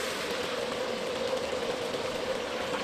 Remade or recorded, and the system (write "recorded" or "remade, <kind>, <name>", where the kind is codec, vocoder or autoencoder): recorded